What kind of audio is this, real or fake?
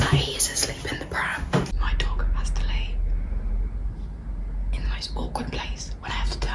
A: real